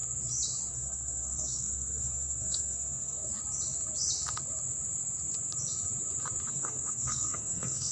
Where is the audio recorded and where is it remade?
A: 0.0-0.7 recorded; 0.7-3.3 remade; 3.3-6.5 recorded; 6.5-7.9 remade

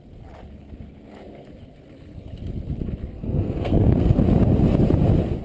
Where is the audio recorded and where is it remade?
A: 0.0-3.0 recorded; 3.0-4.2 remade; 4.2-5.4 recorded

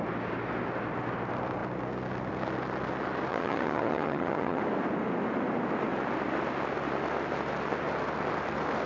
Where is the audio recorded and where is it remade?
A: 0.0-3.3 recorded; 3.3-4.6 remade; 4.6-8.9 recorded

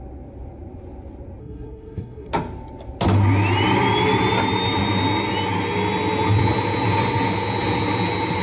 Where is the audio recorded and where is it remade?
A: 0.0-1.4 recorded; 1.4-2.3 remade; 2.3-8.4 recorded

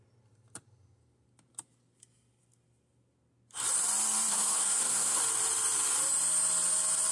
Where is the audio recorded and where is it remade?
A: 0.0-4.3 recorded; 4.3-5.2 remade; 5.2-7.1 recorded

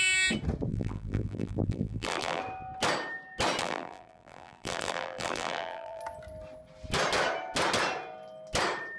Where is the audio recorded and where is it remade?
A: 0.0-0.7 recorded; 0.7-2.4 remade; 2.4-3.6 recorded; 3.6-6.0 remade; 6.0-9.0 recorded

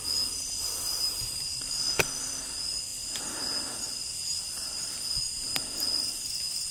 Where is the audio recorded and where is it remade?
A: 0.0-0.9 recorded; 0.9-1.6 remade; 1.6-6.7 recorded

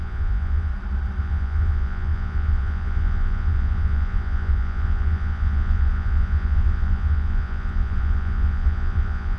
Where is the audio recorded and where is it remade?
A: 0.0-0.7 remade; 0.7-1.2 recorded; 1.2-9.4 remade